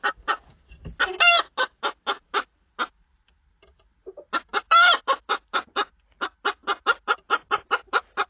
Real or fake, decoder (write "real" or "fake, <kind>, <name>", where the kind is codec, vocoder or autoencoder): real